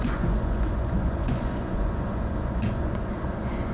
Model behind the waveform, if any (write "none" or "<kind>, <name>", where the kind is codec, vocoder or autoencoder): vocoder, Vocos